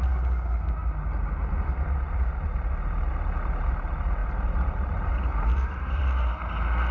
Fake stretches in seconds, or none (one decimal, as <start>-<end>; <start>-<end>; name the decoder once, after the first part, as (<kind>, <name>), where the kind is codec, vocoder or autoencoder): 4.2-6.0 (vocoder, BigVGAN v2)